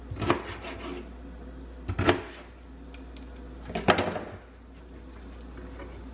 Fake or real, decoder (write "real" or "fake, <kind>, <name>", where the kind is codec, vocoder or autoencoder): real